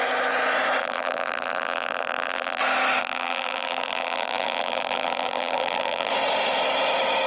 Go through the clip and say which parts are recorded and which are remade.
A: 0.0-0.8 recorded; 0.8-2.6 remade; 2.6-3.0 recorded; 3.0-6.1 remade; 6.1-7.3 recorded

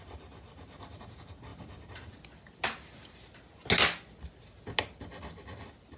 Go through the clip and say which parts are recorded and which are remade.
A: 0.0-6.0 recorded